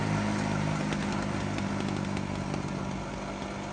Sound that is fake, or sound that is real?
real